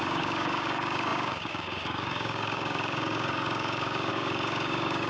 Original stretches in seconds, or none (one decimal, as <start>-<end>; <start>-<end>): none